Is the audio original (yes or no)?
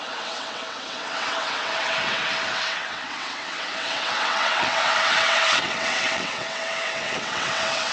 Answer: no